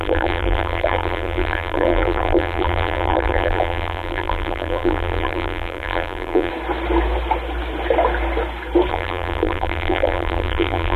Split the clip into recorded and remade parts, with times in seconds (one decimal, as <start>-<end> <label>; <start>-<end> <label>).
0.0-6.5 remade; 6.5-8.9 recorded; 8.9-11.0 remade